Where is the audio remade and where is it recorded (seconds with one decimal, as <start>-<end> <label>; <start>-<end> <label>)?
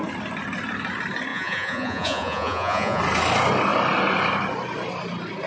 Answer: 0.0-1.3 recorded; 1.3-3.0 remade; 3.0-5.5 recorded